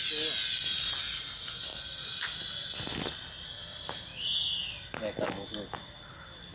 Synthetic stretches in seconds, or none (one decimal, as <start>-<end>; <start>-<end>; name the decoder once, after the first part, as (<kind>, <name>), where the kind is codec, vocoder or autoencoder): none